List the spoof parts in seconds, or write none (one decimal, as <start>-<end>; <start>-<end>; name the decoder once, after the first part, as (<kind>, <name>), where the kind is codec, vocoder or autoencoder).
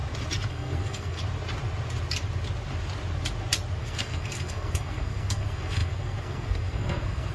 0.5-1.2 (codec, SNAC); 3.8-7.3